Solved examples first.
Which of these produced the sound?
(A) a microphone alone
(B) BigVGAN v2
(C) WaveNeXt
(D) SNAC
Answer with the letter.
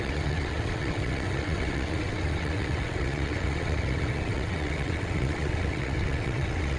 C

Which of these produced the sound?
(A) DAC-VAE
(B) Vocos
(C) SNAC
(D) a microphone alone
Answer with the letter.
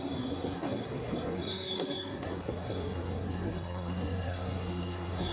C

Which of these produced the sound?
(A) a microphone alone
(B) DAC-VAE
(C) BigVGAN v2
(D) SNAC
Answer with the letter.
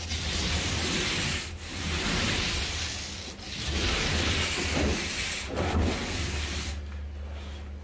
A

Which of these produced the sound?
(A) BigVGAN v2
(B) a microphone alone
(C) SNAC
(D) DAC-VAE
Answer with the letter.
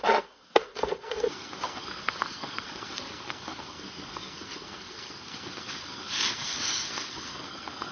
C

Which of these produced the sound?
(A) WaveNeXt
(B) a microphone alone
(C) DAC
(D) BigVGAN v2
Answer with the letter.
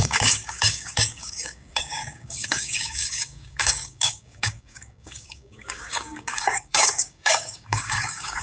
C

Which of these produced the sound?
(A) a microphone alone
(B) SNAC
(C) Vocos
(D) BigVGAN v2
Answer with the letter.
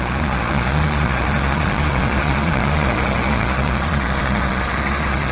C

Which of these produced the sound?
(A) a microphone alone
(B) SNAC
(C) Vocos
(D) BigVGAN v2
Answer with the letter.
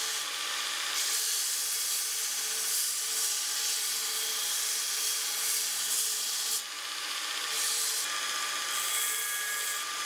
A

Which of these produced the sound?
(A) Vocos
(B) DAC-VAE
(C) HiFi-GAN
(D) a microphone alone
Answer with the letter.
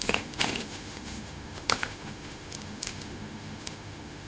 B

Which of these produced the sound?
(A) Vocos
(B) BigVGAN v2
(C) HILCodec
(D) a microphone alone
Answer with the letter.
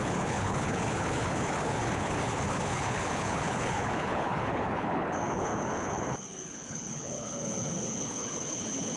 C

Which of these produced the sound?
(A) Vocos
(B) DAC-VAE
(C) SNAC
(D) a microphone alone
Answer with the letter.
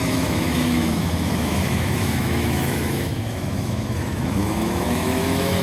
B